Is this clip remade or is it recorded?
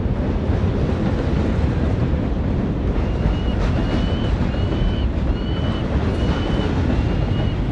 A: recorded